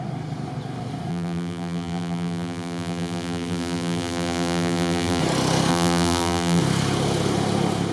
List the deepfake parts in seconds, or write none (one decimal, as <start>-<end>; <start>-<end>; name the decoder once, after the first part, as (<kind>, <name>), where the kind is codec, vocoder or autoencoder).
1.1-5.2 (vocoder, BigVGAN v2); 5.7-6.6